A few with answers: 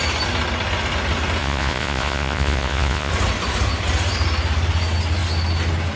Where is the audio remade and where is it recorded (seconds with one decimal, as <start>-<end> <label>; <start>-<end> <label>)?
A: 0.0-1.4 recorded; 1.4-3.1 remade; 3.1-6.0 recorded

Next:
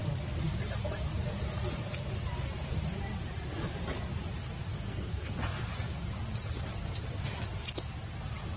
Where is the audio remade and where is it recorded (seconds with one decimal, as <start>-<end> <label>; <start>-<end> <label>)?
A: 0.0-4.7 recorded; 4.7-5.4 remade; 5.4-8.6 recorded

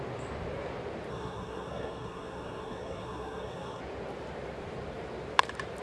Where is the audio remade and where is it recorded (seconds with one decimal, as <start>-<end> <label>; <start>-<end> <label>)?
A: 0.0-1.1 recorded; 1.1-3.8 remade; 3.8-5.8 recorded